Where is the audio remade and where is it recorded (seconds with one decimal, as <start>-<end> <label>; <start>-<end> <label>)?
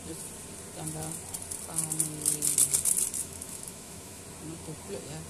0.0-3.2 recorded; 3.2-4.2 remade; 4.2-5.3 recorded